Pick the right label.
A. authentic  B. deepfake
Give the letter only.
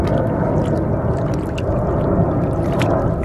A